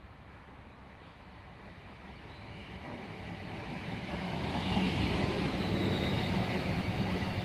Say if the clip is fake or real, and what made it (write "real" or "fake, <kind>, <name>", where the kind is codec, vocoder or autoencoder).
fake, autoencoder, DAC-VAE